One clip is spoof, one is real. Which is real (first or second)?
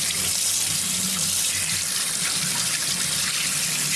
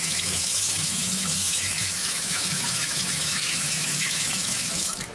first